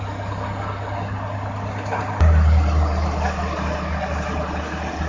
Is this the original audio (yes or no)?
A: yes